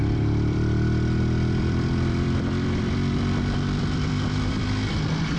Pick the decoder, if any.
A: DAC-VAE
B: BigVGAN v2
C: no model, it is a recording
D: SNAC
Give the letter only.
B